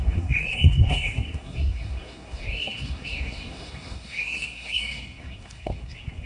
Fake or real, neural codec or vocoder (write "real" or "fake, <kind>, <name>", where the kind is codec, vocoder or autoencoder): fake, codec, SNAC